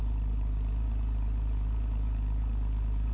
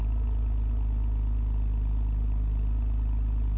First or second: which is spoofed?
first